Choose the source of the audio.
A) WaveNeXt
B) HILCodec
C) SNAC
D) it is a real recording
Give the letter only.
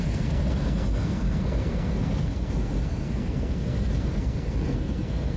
C